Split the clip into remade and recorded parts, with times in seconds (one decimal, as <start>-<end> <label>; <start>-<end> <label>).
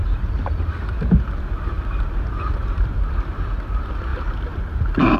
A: 0.0-5.2 recorded